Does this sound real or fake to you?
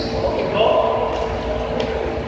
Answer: real